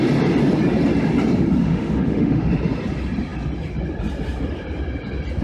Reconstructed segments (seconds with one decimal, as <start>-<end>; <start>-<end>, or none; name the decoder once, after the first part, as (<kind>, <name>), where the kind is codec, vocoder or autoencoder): 1.6-2.5 (autoencoder, DAC-VAE)